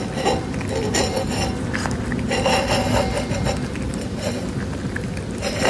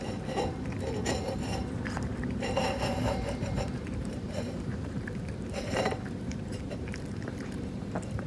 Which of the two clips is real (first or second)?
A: first